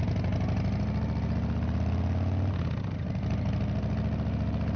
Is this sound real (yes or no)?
yes